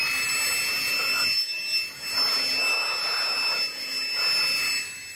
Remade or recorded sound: recorded